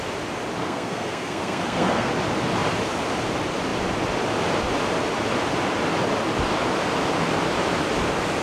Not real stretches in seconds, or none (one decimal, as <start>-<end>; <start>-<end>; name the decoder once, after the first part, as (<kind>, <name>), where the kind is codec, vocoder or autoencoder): 0.6-2.1 (codec, SNAC)